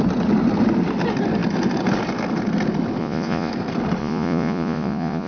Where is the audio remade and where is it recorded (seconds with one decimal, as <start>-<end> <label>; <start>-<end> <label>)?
0.0-3.0 recorded; 3.0-3.5 remade; 3.5-4.0 recorded; 4.0-5.3 remade